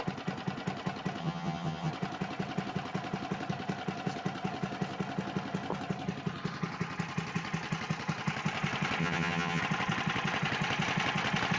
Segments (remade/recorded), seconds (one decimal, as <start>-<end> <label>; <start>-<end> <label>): 0.0-1.2 recorded; 1.2-1.9 remade; 1.9-9.0 recorded; 9.0-9.6 remade; 9.6-11.6 recorded